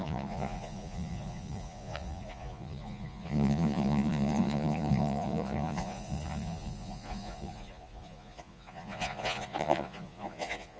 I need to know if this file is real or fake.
fake